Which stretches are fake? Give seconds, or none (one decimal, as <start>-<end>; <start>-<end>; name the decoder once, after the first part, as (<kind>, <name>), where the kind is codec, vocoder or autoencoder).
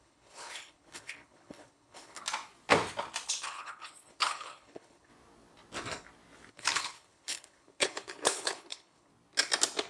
0.0-2.2 (codec, HILCodec); 3.3-5.1; 6.5-9.1